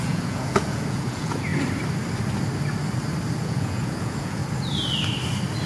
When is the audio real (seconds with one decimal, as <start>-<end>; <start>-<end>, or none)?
1.5-3.4; 4.4-5.7